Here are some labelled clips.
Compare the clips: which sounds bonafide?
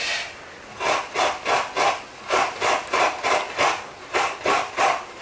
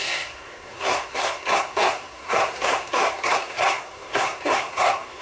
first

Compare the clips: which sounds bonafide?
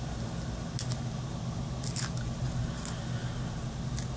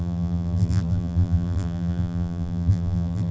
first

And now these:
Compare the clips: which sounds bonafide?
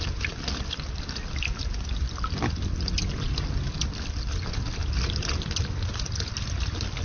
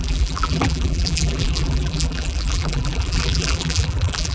first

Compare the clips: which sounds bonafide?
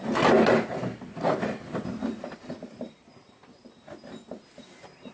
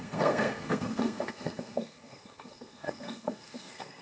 first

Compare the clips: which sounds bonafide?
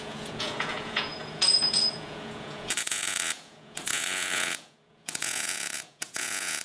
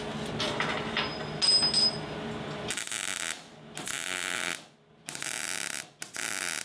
second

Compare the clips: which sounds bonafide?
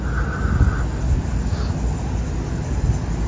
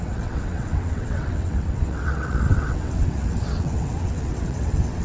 first